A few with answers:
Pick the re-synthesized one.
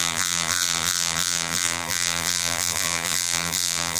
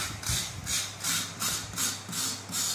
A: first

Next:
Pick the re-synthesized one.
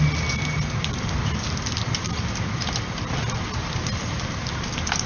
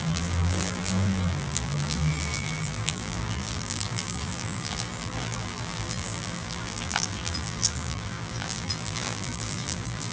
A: second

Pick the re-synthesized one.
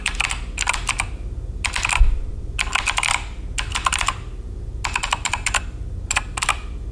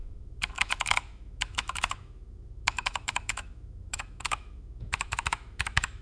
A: second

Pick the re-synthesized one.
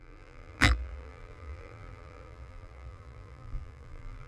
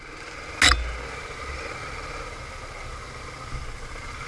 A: first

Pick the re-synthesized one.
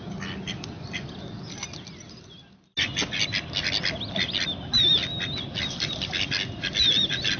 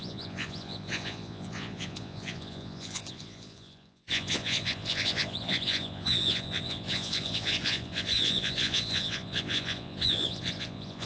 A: second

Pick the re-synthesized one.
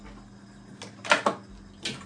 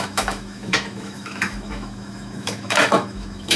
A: second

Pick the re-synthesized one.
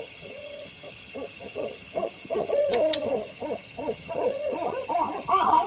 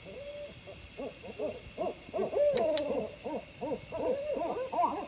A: first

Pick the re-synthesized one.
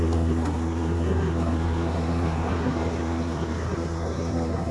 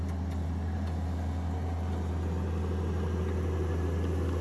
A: first